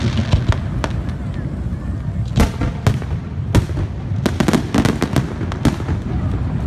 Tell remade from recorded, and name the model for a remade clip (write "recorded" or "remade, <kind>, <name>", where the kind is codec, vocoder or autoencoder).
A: recorded